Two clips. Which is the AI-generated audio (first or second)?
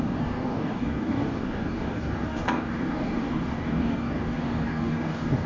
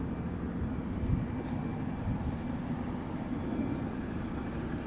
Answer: first